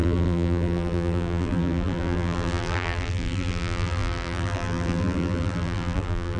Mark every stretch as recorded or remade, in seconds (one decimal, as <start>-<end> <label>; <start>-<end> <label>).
0.0-6.4 remade